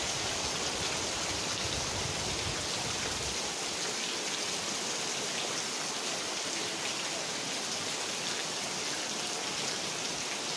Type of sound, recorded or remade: recorded